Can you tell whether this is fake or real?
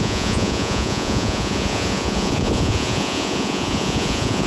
fake